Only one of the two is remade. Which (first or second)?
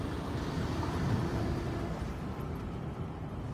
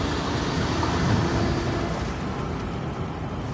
first